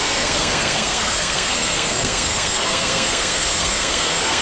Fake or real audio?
fake